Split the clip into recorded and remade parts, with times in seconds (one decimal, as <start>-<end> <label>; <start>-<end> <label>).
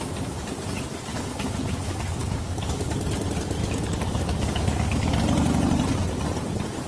0.0-1.1 recorded; 1.1-2.9 remade; 2.9-3.6 recorded; 3.6-5.2 remade; 5.2-6.9 recorded